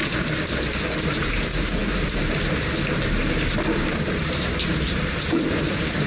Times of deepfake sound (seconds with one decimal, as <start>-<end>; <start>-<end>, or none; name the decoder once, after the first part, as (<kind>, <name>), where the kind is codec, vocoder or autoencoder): 1.0-6.1 (vocoder, BigVGAN v2)